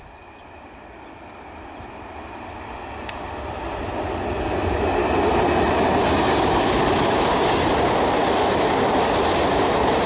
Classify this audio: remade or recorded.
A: recorded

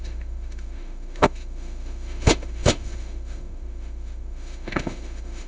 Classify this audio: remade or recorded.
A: remade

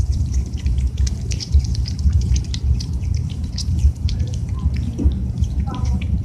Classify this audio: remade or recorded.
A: remade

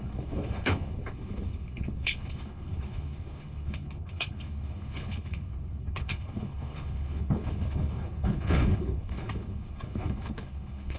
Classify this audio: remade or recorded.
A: remade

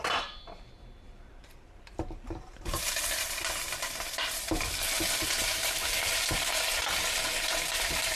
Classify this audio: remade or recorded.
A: remade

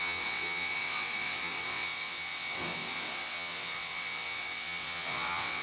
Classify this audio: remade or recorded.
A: remade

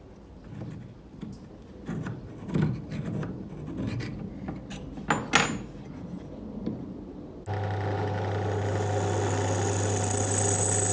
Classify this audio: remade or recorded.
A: recorded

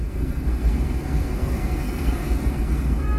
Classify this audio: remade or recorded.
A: remade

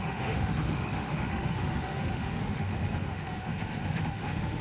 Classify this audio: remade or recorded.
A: remade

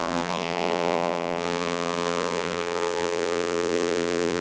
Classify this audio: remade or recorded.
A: remade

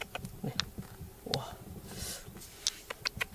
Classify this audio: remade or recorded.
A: recorded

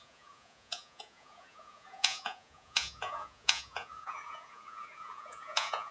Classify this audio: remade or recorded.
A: remade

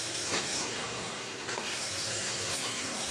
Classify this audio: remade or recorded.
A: remade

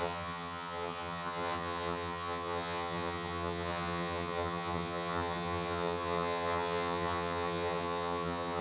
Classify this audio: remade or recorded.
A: remade